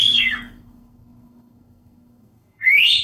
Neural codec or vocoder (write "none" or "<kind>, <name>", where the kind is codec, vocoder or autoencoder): codec, SNAC